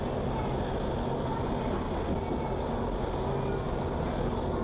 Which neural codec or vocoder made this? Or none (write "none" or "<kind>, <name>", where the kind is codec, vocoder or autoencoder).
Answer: none